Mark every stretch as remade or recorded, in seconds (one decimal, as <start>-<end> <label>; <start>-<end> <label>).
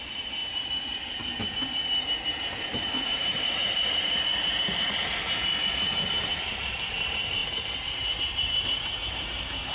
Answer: 0.0-5.4 remade; 5.4-6.3 recorded; 6.3-9.7 remade